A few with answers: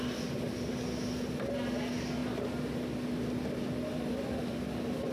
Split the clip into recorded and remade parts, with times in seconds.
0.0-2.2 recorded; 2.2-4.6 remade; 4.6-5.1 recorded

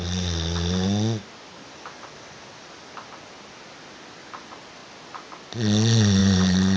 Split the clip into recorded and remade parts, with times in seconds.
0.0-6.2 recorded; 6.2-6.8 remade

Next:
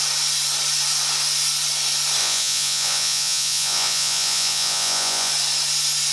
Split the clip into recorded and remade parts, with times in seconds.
0.0-2.2 recorded; 2.2-5.3 remade; 5.3-6.1 recorded